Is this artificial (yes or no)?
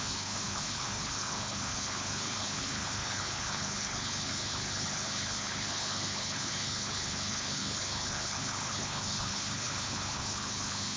yes